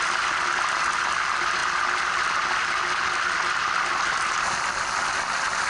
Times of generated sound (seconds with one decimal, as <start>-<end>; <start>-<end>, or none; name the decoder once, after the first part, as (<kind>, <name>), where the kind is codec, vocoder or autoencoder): none